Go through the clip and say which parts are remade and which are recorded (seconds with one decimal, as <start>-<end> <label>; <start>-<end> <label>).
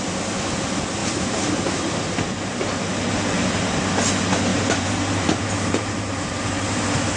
0.0-1.0 recorded; 1.0-2.0 remade; 2.0-4.5 recorded; 4.5-6.8 remade; 6.8-7.2 recorded